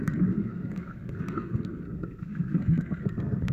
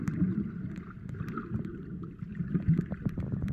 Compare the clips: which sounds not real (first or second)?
first